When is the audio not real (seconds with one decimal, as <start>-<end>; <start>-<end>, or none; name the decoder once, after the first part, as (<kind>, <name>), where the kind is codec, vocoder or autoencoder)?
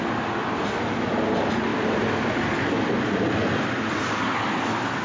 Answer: none